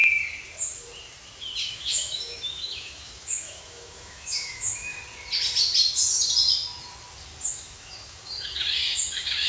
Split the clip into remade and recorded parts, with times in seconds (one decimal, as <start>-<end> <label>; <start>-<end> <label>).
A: 0.0-1.7 recorded; 1.7-4.9 remade; 4.9-7.5 recorded; 7.5-9.5 remade